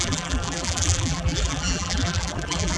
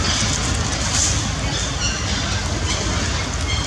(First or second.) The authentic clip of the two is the second